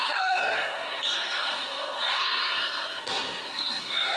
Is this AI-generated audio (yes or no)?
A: yes